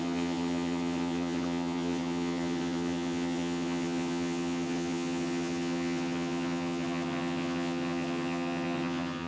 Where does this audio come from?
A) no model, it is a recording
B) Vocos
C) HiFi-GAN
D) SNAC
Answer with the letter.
C